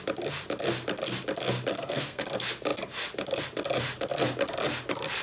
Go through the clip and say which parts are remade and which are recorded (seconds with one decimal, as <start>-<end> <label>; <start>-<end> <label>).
0.0-1.7 recorded; 1.7-2.2 remade; 2.2-5.2 recorded